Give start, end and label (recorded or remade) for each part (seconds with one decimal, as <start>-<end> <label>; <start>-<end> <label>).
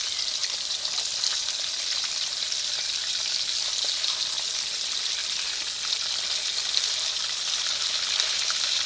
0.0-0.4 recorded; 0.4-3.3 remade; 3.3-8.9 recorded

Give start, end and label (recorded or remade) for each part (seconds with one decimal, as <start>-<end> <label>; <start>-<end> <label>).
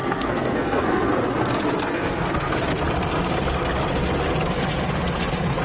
0.0-1.1 remade; 1.1-1.9 recorded; 1.9-2.5 remade; 2.5-5.6 recorded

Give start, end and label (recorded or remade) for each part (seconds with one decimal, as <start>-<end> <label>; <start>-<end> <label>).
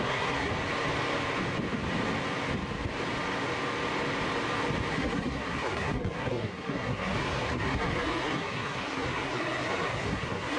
0.0-0.5 remade; 0.5-4.9 recorded; 4.9-10.6 remade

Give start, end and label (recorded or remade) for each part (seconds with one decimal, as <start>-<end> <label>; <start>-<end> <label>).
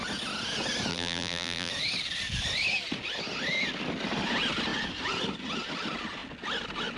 0.0-0.9 recorded; 0.9-1.7 remade; 1.7-7.0 recorded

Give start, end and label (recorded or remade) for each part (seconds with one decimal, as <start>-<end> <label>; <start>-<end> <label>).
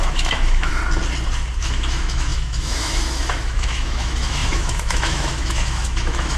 0.0-0.7 remade; 0.7-1.6 recorded; 1.6-6.4 remade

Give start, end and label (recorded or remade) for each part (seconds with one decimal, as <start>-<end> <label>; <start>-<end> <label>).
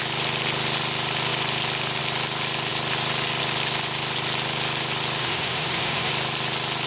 0.0-5.2 recorded; 5.2-6.1 remade; 6.1-6.9 recorded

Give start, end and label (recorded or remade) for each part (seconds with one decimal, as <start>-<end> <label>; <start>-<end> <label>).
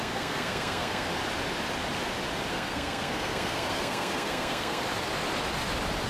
0.0-1.1 remade; 1.1-2.5 recorded; 2.5-4.8 remade; 4.8-6.1 recorded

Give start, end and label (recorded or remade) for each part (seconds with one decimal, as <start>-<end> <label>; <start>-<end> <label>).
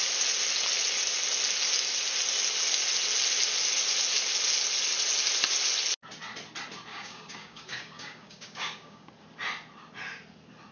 0.0-6.9 recorded; 6.9-9.1 remade; 9.1-10.7 recorded